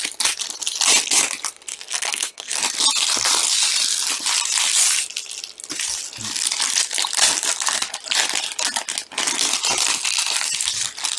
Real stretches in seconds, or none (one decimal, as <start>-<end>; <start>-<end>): 0.0-1.7; 2.6-11.2